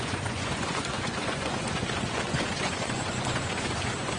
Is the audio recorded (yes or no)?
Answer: no